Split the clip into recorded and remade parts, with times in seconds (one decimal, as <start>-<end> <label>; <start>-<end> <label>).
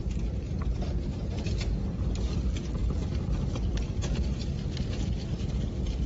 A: 0.0-1.0 remade; 1.0-6.1 recorded